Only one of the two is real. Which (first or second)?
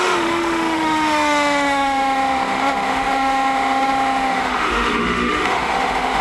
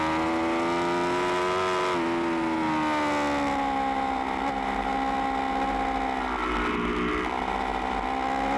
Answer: second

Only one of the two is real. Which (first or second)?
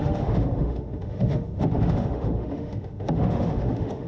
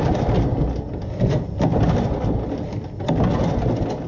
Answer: second